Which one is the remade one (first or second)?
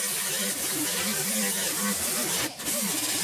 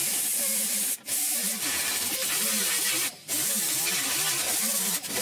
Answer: second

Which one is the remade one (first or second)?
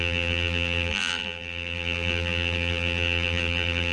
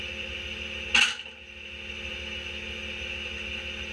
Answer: first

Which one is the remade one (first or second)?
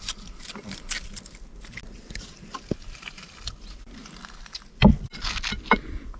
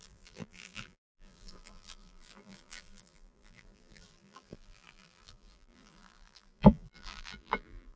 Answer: second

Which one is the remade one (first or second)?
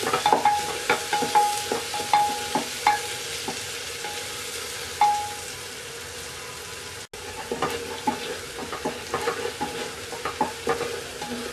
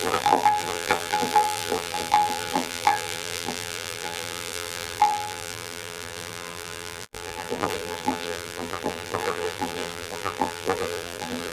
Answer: second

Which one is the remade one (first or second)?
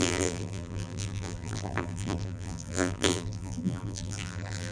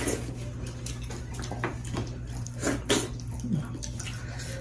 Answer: first